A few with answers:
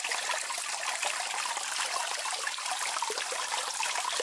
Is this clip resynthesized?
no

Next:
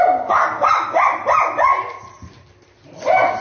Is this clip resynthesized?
no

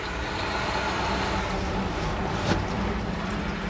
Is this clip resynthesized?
yes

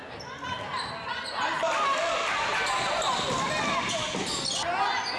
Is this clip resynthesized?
no